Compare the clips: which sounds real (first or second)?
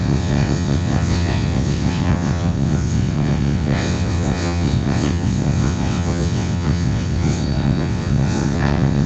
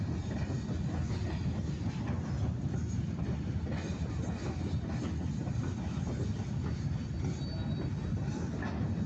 second